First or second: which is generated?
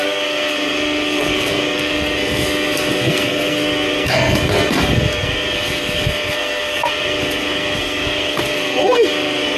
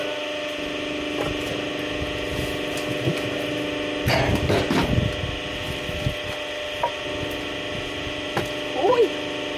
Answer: first